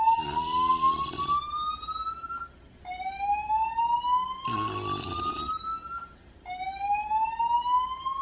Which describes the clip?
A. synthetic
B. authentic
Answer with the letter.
B